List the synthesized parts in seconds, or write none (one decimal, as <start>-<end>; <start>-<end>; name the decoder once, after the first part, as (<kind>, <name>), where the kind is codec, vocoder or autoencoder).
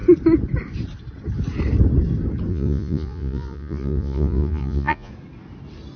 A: 2.5-5.1 (vocoder, Vocos)